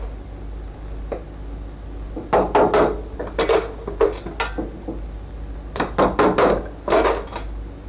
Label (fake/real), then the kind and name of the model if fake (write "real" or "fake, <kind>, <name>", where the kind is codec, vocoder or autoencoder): real